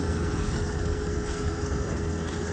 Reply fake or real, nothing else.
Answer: fake